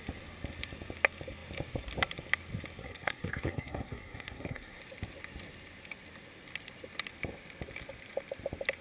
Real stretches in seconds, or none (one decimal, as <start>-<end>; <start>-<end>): 0.0-2.8; 4.8-8.8